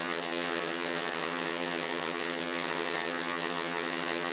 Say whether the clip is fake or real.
fake